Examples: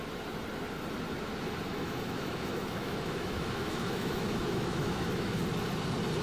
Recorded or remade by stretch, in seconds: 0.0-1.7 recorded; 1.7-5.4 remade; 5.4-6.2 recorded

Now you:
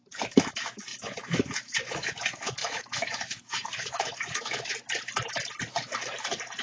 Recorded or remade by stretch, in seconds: 0.0-4.7 remade; 4.7-6.6 recorded

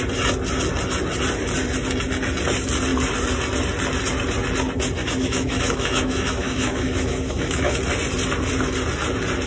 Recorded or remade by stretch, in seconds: 0.0-5.0 recorded; 5.0-7.7 remade; 7.7-9.5 recorded

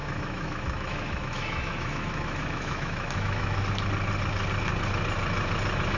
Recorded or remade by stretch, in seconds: 0.0-3.6 remade; 3.6-6.0 recorded

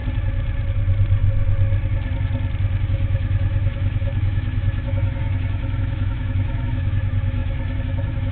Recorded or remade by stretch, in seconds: 0.0-2.8 recorded; 2.8-8.3 remade